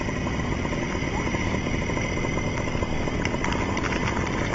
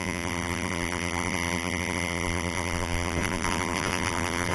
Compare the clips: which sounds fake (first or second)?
second